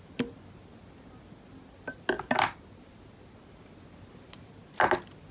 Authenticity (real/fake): real